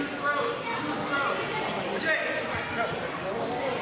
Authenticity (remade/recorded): recorded